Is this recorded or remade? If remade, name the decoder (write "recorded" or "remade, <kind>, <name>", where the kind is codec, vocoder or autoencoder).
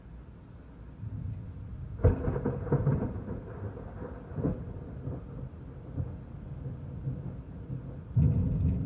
recorded